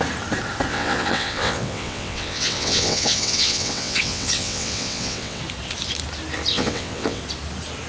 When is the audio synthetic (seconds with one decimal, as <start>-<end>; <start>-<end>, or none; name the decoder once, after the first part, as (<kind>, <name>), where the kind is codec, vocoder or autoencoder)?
0.7-5.4 (vocoder, WaveNeXt); 6.5-7.2